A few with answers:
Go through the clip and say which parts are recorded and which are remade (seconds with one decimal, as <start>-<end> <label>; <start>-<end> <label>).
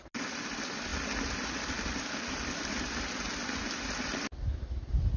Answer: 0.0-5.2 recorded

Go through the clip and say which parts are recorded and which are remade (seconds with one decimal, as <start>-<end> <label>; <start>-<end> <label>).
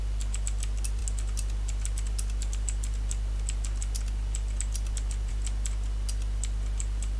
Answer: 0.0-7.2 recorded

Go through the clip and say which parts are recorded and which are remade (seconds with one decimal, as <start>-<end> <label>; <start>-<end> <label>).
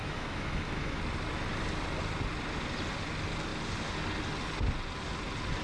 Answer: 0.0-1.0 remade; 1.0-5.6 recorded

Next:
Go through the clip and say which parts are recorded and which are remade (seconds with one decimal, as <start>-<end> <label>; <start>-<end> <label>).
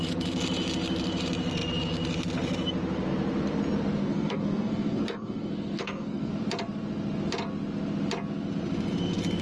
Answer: 0.0-4.0 recorded; 4.0-6.3 remade; 6.3-9.4 recorded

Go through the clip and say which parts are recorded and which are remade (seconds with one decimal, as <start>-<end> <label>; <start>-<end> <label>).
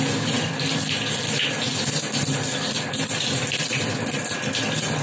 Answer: 0.0-5.0 recorded